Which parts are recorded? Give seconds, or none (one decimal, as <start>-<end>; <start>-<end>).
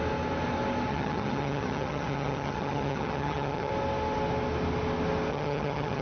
0.0-0.9; 3.7-5.3